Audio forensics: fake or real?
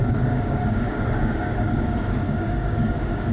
fake